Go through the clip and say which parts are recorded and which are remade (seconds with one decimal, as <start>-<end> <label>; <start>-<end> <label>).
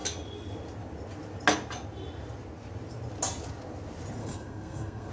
0.0-4.2 recorded; 4.2-5.1 remade